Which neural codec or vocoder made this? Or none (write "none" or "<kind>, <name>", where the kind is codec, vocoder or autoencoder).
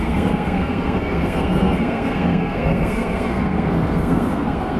codec, SNAC